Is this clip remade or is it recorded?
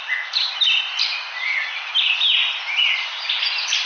recorded